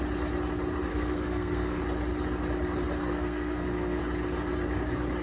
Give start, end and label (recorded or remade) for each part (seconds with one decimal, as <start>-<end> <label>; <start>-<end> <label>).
0.0-0.9 recorded; 0.9-1.8 remade; 1.8-3.0 recorded; 3.0-4.0 remade; 4.0-5.2 recorded